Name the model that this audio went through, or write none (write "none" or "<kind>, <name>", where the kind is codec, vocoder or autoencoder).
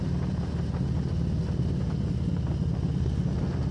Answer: none